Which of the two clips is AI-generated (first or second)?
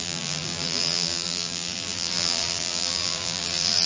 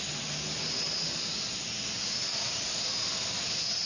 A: first